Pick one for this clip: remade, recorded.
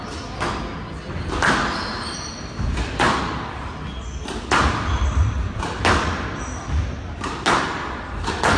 recorded